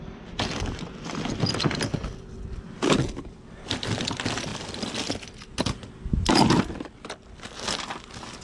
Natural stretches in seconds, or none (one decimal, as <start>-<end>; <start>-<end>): 0.0-8.4

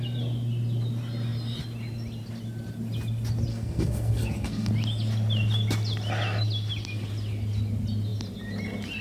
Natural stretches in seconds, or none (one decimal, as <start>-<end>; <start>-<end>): 0.0-3.5; 4.7-9.0

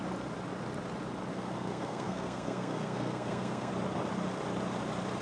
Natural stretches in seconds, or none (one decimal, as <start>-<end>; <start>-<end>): 0.0-1.3; 3.7-5.2

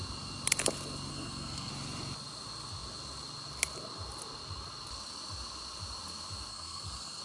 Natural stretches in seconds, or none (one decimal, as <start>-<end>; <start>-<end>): 0.0-1.1; 1.7-6.5